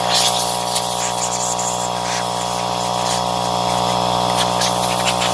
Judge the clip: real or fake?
real